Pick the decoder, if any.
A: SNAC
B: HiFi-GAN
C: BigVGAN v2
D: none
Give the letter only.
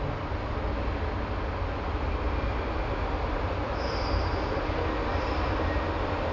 D